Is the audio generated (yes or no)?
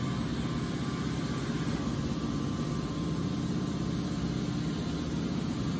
no